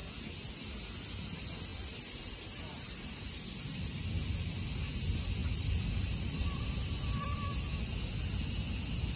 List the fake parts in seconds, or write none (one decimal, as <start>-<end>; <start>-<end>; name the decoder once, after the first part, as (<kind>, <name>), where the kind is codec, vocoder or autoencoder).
1.7-3.8 (vocoder, BigVGAN v2); 5.4-7.6